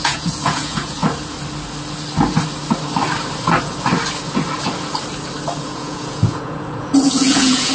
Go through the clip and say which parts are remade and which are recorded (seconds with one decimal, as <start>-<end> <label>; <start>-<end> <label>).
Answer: 0.0-1.0 remade; 1.0-5.6 recorded; 5.6-7.7 remade